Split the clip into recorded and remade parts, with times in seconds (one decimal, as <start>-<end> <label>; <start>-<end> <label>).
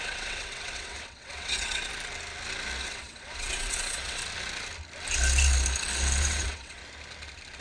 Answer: 0.0-1.9 remade; 1.9-2.8 recorded; 2.8-4.2 remade; 4.2-6.2 recorded; 6.2-6.8 remade; 6.8-7.6 recorded